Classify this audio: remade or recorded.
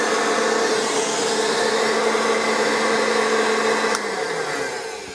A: recorded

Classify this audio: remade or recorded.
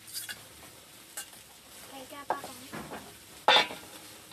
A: recorded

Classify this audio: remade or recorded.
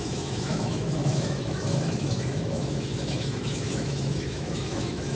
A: remade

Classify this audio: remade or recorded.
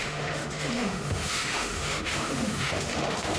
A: remade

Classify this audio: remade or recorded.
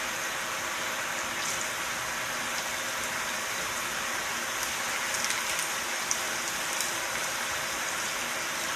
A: recorded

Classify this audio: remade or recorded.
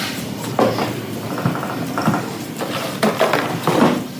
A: recorded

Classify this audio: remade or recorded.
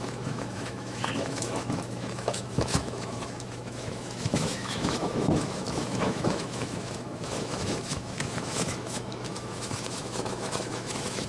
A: remade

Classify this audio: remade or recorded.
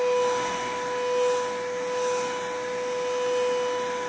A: recorded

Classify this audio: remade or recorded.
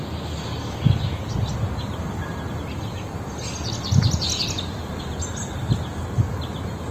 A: recorded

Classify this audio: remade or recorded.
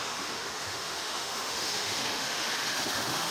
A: remade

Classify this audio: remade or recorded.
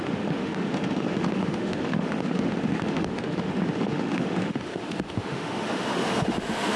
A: remade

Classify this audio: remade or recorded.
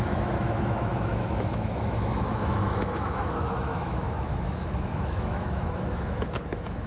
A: remade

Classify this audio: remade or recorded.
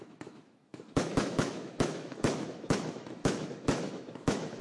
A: remade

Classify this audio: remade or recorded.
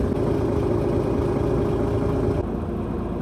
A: recorded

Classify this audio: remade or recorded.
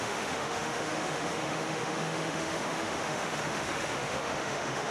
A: remade